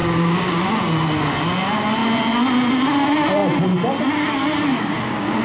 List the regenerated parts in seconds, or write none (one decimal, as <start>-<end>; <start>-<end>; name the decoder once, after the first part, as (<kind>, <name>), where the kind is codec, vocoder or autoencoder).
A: 0.0-0.7 (codec, DAC); 4.7-5.4